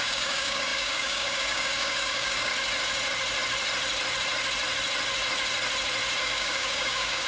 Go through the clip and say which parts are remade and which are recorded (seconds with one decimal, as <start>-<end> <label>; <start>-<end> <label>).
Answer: 0.0-2.5 remade; 2.5-6.2 recorded; 6.2-7.3 remade